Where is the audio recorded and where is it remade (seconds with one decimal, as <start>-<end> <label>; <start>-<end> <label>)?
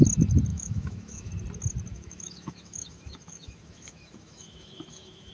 0.0-0.5 recorded; 0.5-1.3 remade; 1.3-1.9 recorded; 1.9-5.3 remade